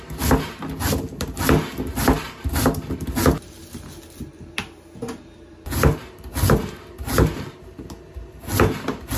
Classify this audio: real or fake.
real